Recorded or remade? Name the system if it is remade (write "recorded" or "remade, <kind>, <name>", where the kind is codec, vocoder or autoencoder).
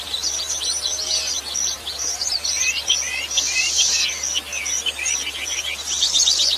remade, vocoder, BigVGAN v2